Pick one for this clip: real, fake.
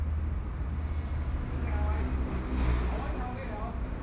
real